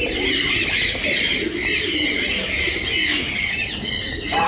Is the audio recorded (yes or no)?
yes